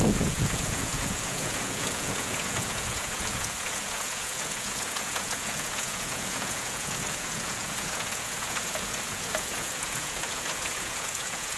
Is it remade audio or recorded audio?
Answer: remade